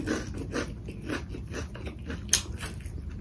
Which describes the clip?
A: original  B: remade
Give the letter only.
A